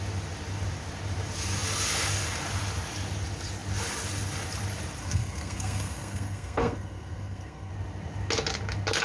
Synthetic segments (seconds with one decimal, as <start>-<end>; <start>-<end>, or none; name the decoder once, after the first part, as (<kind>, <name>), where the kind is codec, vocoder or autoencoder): 5.0-7.7 (codec, SNAC)